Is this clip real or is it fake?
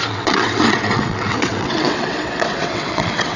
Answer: fake